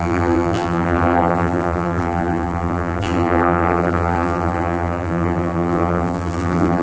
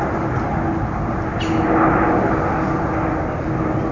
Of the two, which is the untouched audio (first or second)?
second